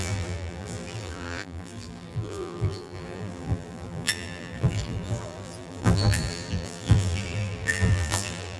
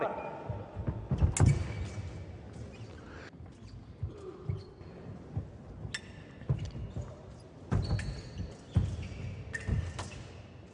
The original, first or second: second